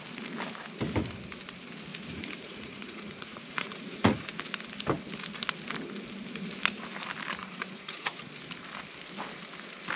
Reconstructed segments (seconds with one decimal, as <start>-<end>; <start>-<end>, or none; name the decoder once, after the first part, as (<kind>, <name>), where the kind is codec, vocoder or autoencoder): 1.9-4.3 (vocoder, Vocos); 7.4-8.2